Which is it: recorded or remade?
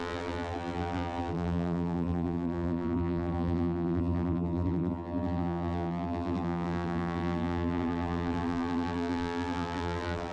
remade